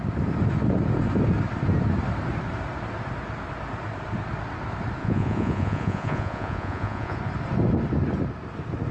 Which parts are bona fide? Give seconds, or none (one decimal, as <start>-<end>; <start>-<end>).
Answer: 0.0-5.0; 7.2-8.9